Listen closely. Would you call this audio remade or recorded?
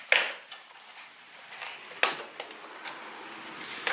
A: recorded